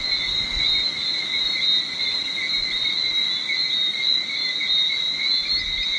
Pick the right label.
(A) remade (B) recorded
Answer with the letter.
B